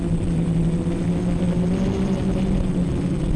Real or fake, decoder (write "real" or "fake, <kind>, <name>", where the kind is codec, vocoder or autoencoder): real